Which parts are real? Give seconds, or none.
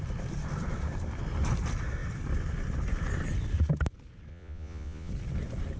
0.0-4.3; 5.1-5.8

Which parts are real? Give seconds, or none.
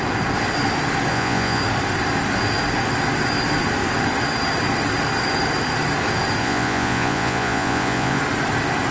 0.0-1.1; 1.6-6.4; 8.2-8.9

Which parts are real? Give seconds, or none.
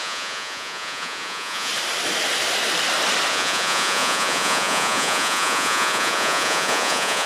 1.7-3.3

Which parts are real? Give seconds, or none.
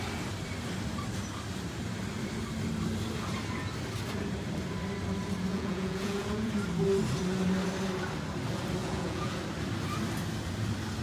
0.0-5.5; 6.5-8.8; 9.4-11.0